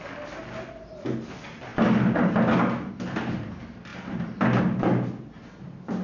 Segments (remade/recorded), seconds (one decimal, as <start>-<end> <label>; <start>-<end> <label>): 0.0-6.0 recorded